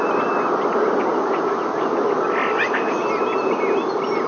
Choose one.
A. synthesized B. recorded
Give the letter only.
B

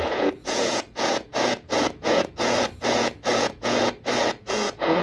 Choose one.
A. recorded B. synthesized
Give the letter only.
B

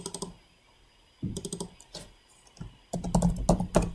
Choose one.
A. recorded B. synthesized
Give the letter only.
A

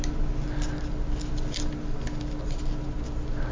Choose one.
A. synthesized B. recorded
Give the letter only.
B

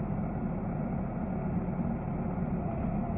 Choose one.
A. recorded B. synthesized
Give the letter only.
A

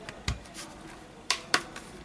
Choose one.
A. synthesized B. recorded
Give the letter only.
B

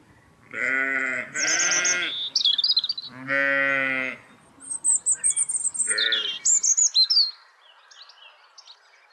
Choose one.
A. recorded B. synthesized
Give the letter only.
A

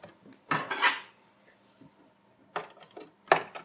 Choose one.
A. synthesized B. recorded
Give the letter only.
B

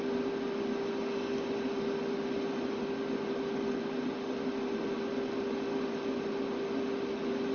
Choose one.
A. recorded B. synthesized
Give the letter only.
A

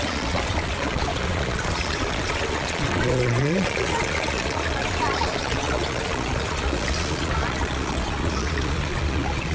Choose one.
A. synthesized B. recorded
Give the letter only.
A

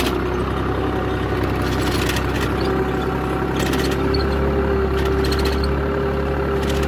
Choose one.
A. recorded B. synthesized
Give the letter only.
A